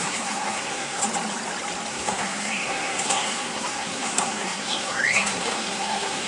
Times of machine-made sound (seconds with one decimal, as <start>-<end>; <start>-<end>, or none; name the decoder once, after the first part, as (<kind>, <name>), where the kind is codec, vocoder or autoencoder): 0.0-1.0 (codec, SNAC); 1.9-6.3